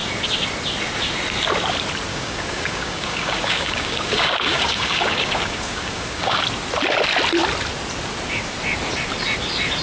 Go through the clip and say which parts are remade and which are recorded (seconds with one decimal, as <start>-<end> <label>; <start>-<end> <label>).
0.0-2.1 recorded; 2.1-6.4 remade; 6.4-9.8 recorded